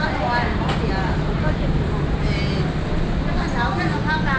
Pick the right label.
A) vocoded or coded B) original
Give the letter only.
B